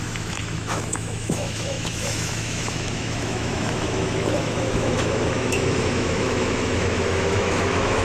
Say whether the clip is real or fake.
fake